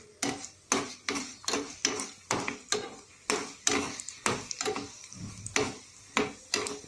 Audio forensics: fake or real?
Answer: real